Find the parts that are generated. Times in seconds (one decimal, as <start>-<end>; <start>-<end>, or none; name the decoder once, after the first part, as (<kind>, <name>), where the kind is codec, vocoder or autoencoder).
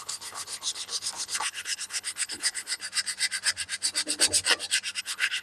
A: 0.0-2.8 (codec, HILCodec); 5.0-5.4